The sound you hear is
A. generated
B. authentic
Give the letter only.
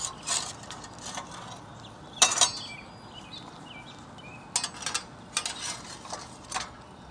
B